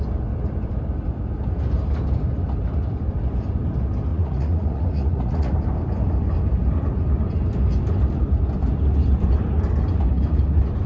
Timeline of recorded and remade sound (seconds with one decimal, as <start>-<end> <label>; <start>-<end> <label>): 0.0-4.1 recorded; 4.1-5.5 remade; 5.5-10.9 recorded